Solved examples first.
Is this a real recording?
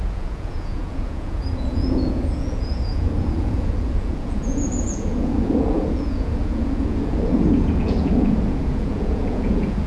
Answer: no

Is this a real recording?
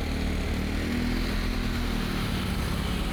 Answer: yes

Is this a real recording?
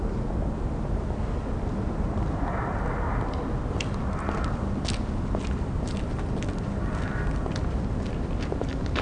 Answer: yes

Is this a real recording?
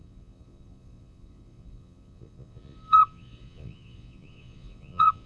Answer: no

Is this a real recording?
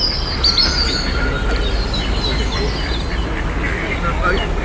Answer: yes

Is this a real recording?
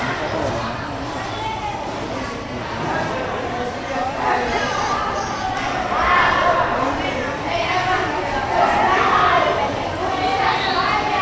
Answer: yes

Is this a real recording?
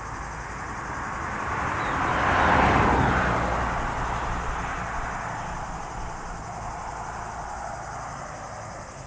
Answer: yes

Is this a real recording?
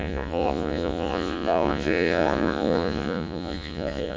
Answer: no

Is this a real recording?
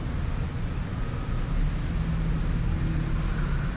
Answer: yes